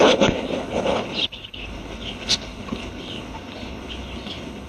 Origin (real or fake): fake